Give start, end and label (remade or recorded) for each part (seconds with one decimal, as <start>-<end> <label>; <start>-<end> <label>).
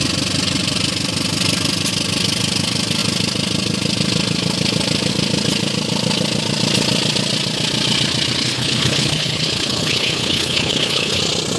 0.0-8.4 recorded; 8.4-11.2 remade; 11.2-11.6 recorded